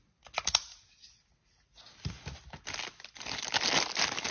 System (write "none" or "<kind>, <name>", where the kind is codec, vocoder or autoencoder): none